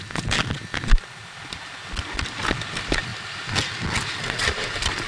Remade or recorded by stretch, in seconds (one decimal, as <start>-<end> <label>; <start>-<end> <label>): 0.0-5.1 recorded